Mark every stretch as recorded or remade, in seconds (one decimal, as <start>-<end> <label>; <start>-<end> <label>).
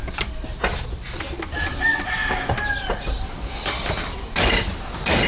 0.0-5.3 recorded